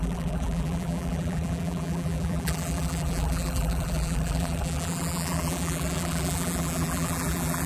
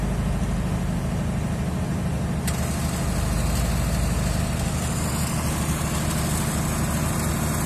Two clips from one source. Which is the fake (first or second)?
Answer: first